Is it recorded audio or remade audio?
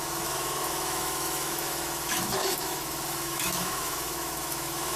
remade